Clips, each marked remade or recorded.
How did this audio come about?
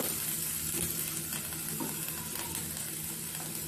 recorded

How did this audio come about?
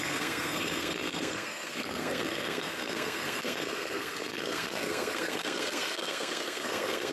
remade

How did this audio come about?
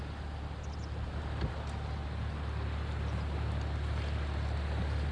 recorded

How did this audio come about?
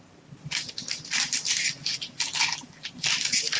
recorded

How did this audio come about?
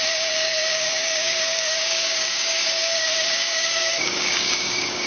remade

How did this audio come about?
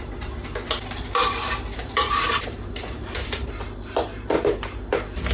remade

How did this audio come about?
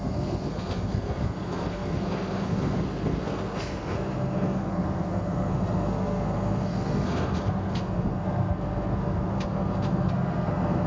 remade